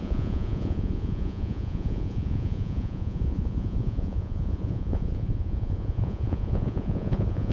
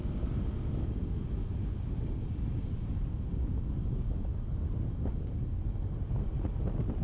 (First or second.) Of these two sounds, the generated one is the first